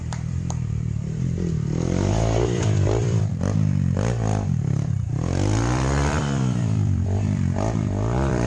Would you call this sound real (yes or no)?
no